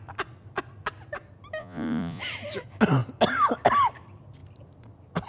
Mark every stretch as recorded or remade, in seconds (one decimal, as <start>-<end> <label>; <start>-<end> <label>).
0.0-1.6 recorded; 1.6-2.2 remade; 2.2-5.3 recorded

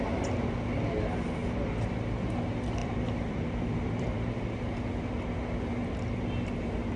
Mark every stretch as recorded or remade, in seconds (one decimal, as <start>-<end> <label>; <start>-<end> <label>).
0.0-2.8 recorded; 2.8-4.3 remade; 4.3-7.0 recorded

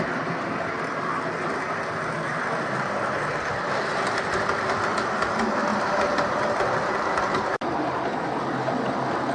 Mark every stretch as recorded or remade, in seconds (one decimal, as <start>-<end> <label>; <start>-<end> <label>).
0.0-9.3 recorded

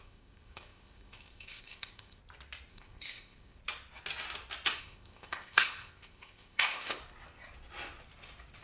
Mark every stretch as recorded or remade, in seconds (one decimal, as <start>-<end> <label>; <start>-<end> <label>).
0.0-2.2 remade; 2.2-2.7 recorded; 2.7-3.6 remade; 3.6-4.8 recorded; 4.8-7.0 remade; 7.0-8.6 recorded

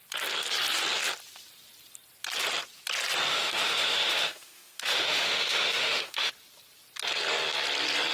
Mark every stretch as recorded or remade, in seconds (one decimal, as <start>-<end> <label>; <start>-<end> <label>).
0.0-3.3 recorded; 3.3-6.3 remade; 6.3-8.1 recorded